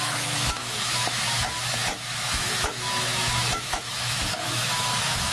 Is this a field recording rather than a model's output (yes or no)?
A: no